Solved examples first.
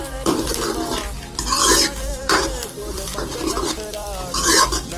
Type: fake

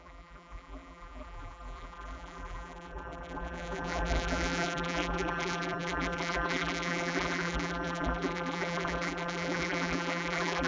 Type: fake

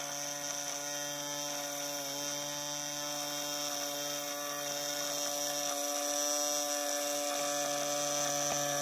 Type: real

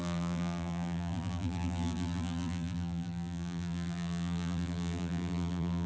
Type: fake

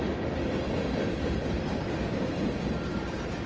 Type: real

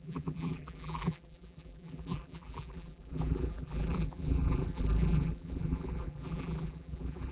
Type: fake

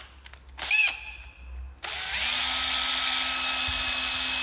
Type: real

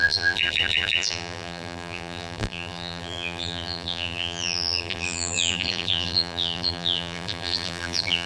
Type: fake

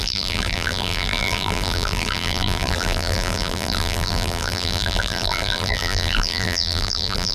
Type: fake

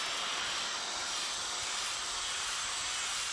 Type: fake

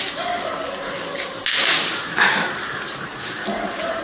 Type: real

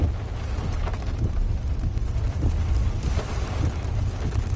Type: real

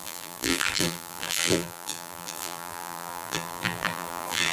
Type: fake